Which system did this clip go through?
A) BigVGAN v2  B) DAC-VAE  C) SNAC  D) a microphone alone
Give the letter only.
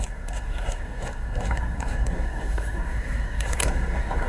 C